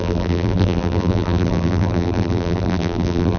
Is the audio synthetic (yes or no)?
yes